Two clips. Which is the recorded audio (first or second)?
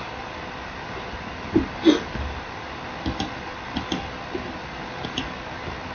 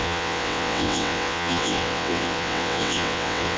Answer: first